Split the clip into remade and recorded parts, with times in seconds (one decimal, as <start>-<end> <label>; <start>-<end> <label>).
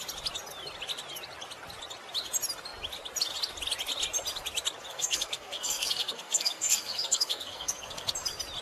0.0-4.9 recorded; 4.9-8.1 remade; 8.1-8.6 recorded